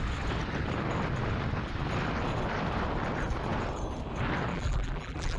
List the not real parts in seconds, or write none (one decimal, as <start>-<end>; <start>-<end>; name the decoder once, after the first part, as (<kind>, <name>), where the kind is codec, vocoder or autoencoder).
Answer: 4.5-5.4 (vocoder, BigVGAN v2)